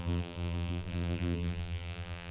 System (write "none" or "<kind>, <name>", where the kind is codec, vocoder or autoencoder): vocoder, BigVGAN v2